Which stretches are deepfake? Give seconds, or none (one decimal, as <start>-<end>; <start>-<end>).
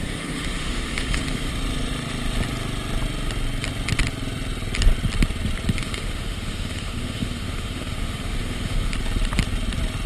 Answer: 0.0-1.5; 5.8-8.9